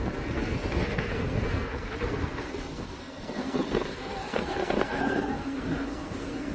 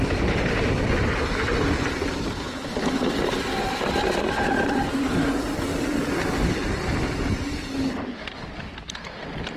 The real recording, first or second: second